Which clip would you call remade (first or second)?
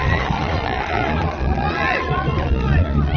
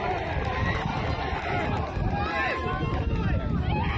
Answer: first